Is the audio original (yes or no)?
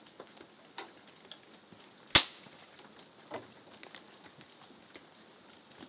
yes